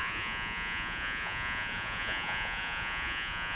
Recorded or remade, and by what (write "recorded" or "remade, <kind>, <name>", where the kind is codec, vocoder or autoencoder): remade, vocoder, Vocos